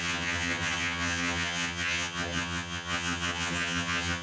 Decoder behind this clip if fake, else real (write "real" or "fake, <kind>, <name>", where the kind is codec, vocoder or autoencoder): fake, vocoder, HiFi-GAN